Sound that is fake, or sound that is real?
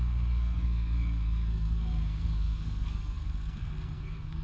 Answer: fake